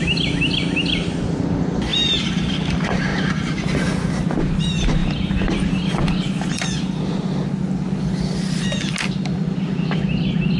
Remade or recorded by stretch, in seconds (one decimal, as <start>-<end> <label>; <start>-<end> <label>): 0.0-5.0 recorded; 5.0-7.0 remade; 7.0-10.6 recorded